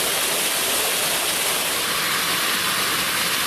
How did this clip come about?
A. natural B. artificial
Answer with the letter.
A